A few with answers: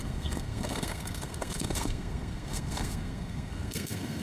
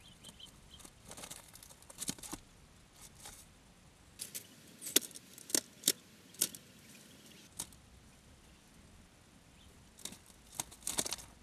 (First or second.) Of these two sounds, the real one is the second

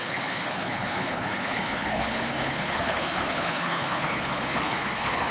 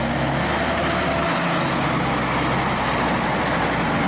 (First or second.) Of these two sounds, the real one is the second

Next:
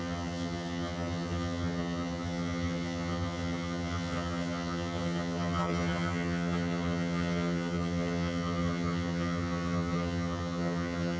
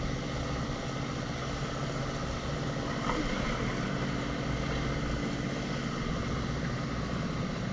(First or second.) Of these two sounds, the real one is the second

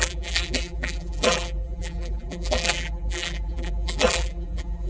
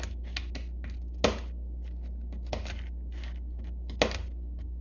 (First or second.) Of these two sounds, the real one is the second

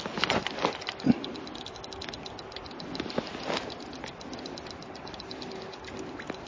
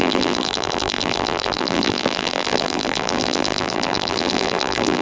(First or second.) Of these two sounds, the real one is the first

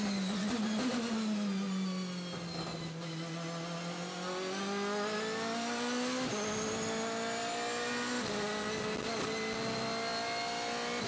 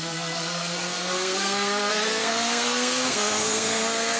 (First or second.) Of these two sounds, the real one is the first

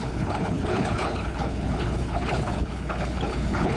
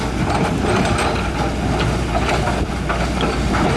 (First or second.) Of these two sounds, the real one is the second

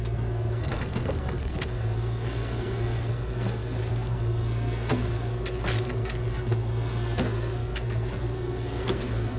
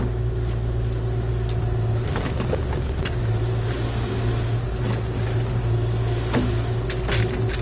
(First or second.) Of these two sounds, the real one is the second